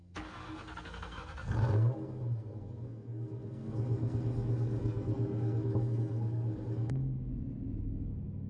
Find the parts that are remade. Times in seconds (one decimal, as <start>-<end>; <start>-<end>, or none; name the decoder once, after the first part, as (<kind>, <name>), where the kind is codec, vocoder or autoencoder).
0.0-7.3 (codec, SNAC); 7.8-8.5